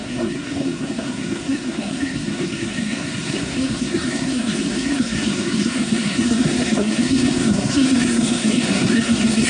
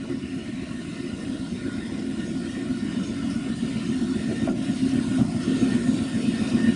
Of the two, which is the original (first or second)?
second